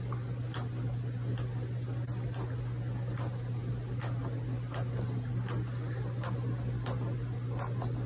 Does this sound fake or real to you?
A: real